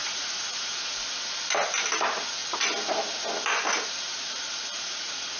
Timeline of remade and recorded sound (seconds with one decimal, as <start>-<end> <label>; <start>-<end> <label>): 0.0-1.0 remade; 1.0-4.1 recorded; 4.1-5.4 remade